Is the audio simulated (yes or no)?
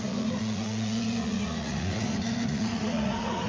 yes